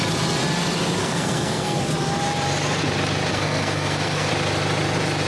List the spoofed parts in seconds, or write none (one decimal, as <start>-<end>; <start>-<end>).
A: 1.0-1.9; 3.3-4.3